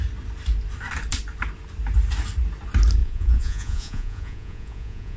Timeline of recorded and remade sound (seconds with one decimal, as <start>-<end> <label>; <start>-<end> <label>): 0.0-3.0 recorded; 3.0-5.2 remade